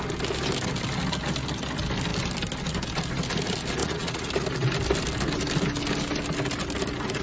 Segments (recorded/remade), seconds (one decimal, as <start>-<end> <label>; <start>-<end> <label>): 0.0-3.8 recorded; 3.8-4.3 remade; 4.3-7.2 recorded